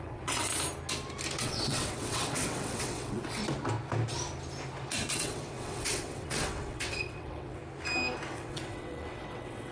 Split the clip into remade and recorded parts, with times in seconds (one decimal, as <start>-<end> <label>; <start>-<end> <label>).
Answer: 0.0-0.5 remade; 0.5-1.4 recorded; 1.4-3.4 remade; 3.4-5.1 recorded; 5.1-7.6 remade; 7.6-8.3 recorded; 8.3-9.7 remade